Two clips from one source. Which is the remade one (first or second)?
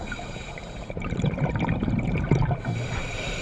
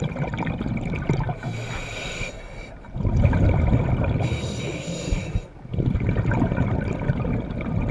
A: first